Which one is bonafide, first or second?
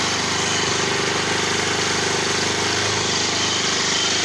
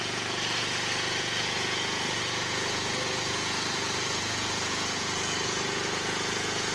first